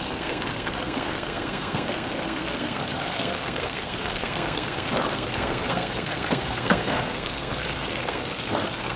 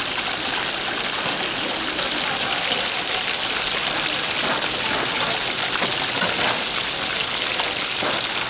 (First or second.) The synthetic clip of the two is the first